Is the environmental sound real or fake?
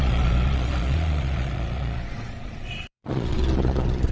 fake